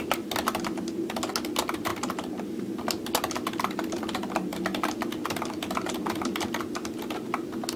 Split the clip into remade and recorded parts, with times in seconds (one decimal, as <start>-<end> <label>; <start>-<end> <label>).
0.0-7.8 recorded